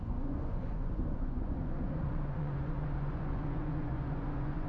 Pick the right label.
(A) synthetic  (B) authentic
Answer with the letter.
A